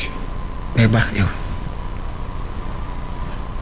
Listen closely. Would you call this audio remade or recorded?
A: recorded